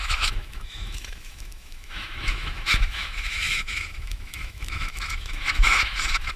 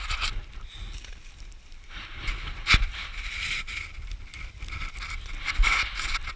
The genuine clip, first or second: second